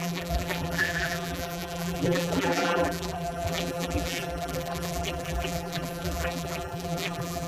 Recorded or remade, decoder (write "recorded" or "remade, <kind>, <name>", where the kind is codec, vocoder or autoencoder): remade, vocoder, BigVGAN v2